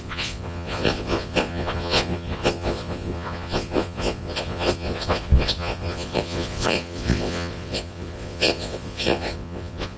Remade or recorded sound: remade